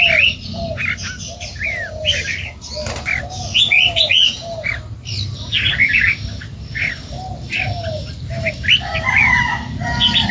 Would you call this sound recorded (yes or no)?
yes